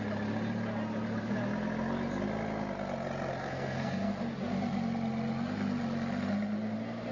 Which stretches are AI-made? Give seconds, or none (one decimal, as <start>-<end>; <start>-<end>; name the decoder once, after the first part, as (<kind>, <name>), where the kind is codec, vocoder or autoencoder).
3.4-4.1 (codec, SNAC)